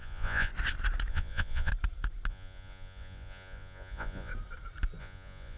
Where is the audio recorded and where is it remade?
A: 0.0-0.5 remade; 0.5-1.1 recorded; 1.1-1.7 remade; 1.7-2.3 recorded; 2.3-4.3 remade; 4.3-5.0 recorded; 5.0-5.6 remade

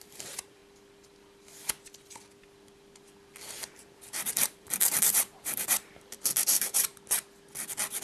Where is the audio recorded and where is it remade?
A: 0.0-0.6 remade; 0.6-3.4 recorded; 3.4-6.9 remade; 6.9-8.0 recorded

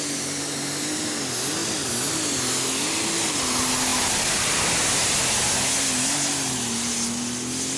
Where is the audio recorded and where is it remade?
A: 0.0-7.8 recorded

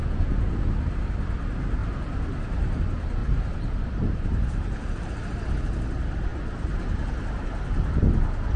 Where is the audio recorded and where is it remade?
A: 0.0-1.8 recorded; 1.8-2.8 remade; 2.8-3.2 recorded; 3.2-5.5 remade; 5.5-8.6 recorded

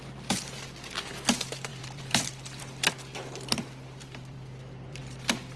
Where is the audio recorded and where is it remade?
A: 0.0-1.7 recorded; 1.7-2.9 remade; 2.9-3.6 recorded; 3.6-5.0 remade; 5.0-5.6 recorded

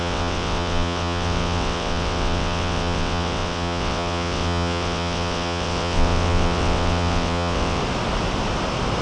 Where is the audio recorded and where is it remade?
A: 0.0-7.8 remade; 7.8-9.0 recorded

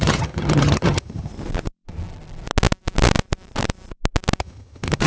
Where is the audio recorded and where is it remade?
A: 0.0-1.3 remade; 1.3-4.4 recorded; 4.4-5.1 remade

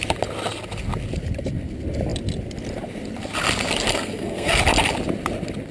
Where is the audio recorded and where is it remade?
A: 0.0-3.9 recorded; 3.9-4.6 remade; 4.6-5.7 recorded